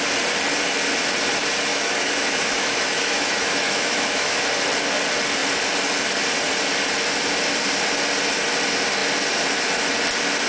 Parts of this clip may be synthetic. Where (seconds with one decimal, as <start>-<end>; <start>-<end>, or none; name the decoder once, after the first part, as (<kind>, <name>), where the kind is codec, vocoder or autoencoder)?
1.7-4.5 (autoencoder, DAC-VAE)